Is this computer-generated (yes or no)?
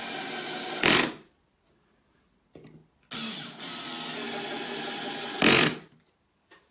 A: no